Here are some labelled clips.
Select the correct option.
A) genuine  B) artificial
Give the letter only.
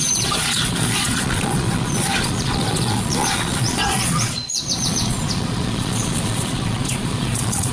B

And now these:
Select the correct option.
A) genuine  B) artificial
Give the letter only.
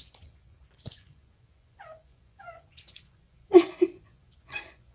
B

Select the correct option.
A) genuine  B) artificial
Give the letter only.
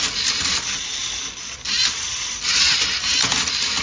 A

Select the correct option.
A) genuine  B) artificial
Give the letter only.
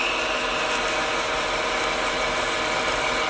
A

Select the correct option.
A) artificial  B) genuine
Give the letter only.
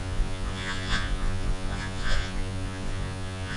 A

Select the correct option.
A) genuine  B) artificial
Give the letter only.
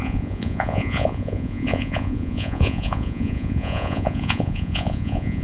B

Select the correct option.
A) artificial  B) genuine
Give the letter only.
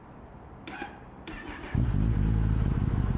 B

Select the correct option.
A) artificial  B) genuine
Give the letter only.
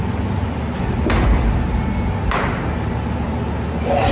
B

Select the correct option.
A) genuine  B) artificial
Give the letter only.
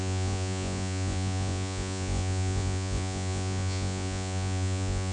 B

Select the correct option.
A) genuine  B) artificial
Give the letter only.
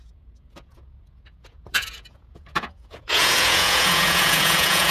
B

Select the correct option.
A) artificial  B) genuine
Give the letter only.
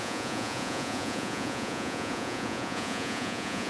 A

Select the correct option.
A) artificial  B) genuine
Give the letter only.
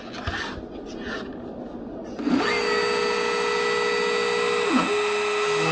B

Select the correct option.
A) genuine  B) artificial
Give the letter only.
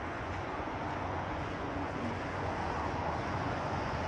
B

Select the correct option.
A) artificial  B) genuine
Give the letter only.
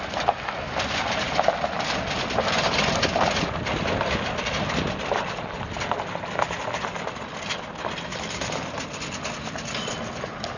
B